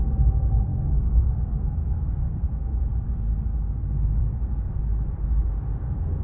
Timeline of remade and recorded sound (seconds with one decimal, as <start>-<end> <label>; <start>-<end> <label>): 0.0-2.7 remade; 2.7-4.2 recorded; 4.2-4.9 remade; 4.9-5.8 recorded; 5.8-6.2 remade